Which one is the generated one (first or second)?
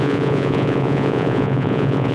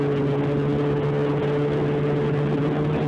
first